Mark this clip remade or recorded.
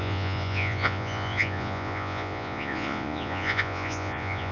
remade